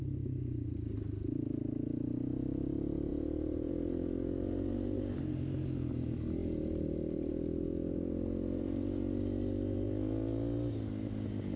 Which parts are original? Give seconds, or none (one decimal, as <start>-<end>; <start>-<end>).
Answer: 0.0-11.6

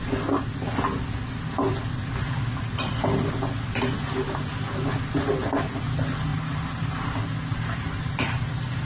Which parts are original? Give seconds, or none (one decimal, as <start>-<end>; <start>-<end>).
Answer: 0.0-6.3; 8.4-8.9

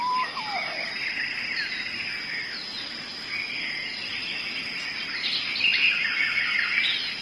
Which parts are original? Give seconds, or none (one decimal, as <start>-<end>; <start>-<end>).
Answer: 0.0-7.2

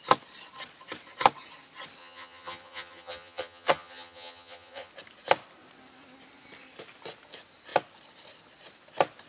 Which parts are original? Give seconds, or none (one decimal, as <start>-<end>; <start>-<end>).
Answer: 0.0-2.0; 4.9-9.3

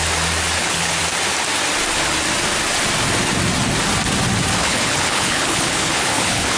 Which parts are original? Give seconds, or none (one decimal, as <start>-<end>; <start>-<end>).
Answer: 0.0-0.6; 1.0-4.6

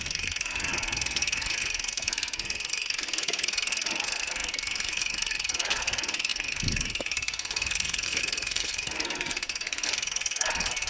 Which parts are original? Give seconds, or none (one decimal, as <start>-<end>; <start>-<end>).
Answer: none